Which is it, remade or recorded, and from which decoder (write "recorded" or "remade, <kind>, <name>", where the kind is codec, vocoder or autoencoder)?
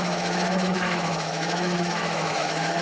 remade, autoencoder, DAC-VAE